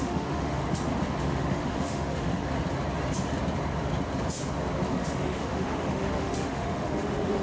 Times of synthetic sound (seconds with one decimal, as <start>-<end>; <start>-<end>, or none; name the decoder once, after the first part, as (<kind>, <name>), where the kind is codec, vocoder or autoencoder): 0.0-0.6 (autoencoder, DAC-VAE); 1.2-2.4; 4.9-7.4